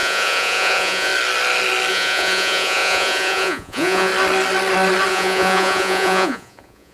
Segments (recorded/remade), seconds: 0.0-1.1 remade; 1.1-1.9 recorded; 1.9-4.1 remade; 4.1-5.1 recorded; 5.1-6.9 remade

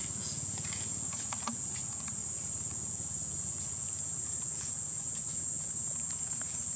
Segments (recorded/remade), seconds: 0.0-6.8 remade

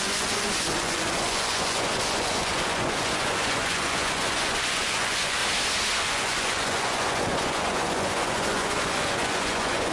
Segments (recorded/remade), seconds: 0.0-5.4 remade; 5.4-6.0 recorded; 6.0-9.9 remade